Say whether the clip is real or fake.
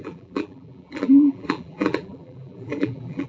fake